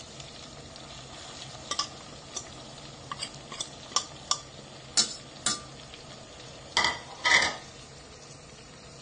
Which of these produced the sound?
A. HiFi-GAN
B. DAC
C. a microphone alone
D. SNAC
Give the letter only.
C